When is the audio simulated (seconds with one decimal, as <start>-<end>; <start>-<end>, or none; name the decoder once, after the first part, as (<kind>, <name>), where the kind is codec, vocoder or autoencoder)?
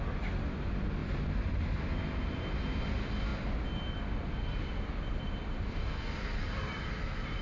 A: 1.0-1.8 (vocoder, BigVGAN v2)